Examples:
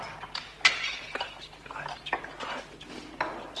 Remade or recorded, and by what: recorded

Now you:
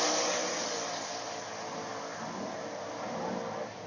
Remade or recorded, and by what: recorded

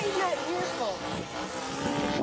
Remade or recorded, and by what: recorded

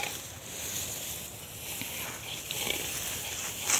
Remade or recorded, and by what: recorded